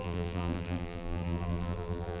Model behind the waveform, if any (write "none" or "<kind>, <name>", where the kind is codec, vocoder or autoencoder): vocoder, BigVGAN v2